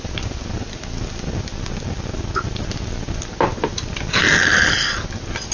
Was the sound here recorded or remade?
recorded